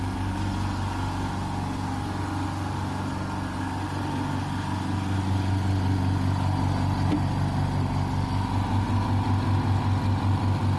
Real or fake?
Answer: real